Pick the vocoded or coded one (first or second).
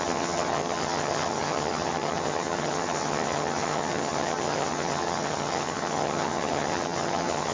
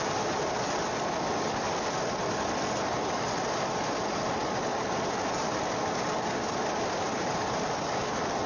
first